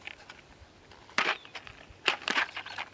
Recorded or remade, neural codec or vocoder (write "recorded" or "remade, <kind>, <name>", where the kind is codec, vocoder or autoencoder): recorded